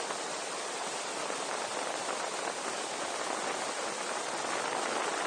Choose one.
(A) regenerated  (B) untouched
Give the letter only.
B